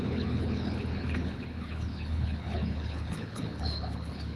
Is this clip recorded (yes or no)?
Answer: no